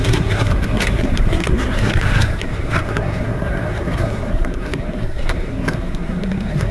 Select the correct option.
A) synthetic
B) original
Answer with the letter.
A